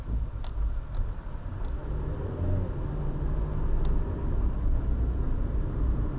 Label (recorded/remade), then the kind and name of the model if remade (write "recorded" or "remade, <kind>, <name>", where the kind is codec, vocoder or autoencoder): recorded